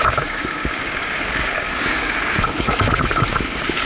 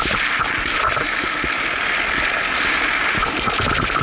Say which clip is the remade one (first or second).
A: first